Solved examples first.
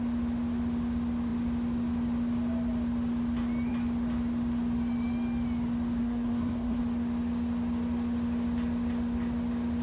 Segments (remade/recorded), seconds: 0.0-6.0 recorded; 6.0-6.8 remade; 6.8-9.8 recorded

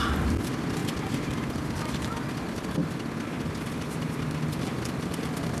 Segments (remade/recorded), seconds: 0.0-5.6 recorded

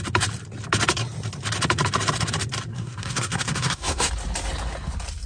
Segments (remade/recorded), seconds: 0.0-2.7 recorded; 2.7-4.1 remade; 4.1-5.3 recorded

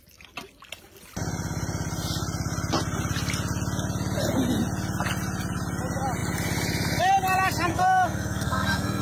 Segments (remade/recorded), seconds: 0.0-7.7 recorded; 7.7-9.0 remade

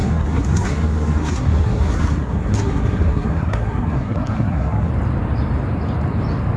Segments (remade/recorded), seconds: 0.0-4.9 remade; 4.9-6.6 recorded